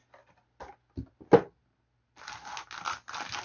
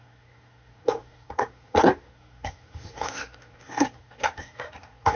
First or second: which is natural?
first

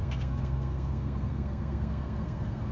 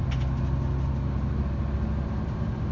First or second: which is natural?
second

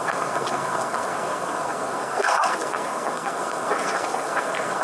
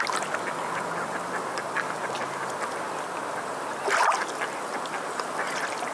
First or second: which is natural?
second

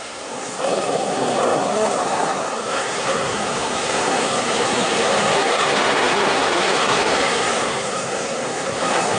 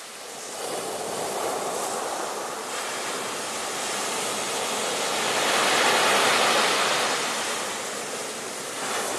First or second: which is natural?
second